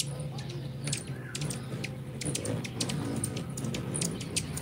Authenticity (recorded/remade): recorded